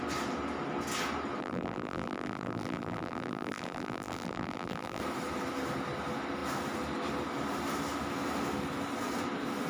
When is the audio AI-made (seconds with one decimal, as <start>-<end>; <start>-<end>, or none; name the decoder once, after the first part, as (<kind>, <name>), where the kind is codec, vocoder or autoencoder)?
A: 1.4-5.0 (vocoder, BigVGAN v2)